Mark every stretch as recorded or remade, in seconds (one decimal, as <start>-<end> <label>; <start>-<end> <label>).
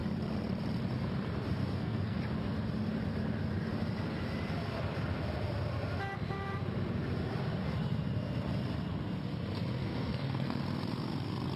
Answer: 0.0-1.6 recorded; 1.6-2.2 remade; 2.2-9.8 recorded; 9.8-10.6 remade; 10.6-11.6 recorded